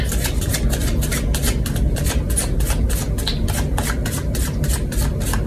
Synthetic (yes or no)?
no